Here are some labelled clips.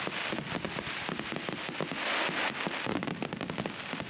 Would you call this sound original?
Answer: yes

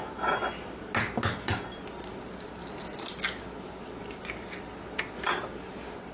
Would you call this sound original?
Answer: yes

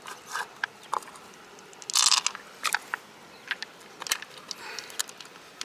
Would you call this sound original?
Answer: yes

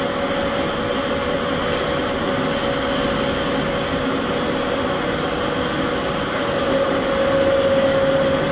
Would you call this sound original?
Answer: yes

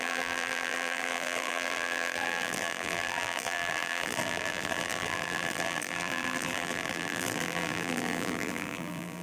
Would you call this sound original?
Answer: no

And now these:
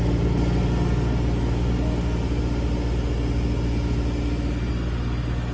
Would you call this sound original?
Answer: yes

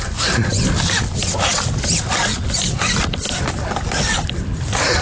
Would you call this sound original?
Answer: yes